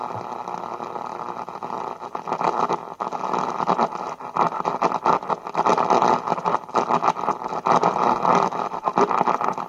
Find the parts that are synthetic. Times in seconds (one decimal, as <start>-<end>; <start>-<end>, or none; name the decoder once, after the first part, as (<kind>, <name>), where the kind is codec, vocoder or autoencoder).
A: none